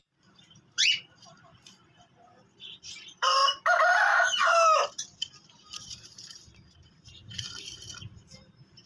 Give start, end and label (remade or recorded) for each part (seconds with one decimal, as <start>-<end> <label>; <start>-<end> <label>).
0.0-3.4 remade; 3.4-4.9 recorded; 4.9-8.9 remade